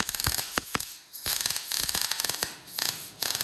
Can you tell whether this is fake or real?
fake